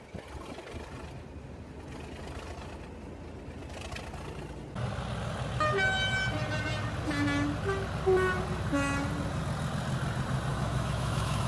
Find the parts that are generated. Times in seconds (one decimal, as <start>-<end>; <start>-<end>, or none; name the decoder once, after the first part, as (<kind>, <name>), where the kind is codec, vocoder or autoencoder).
10.5-11.5 (autoencoder, DAC-VAE)